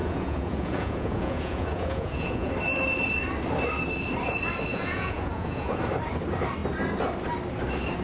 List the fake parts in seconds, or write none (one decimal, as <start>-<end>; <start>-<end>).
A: 0.0-2.5; 4.7-5.8